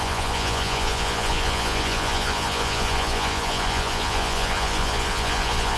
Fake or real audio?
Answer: fake